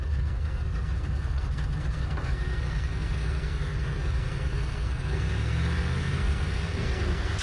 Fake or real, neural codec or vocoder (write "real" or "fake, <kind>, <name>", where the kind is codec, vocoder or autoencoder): fake, codec, SNAC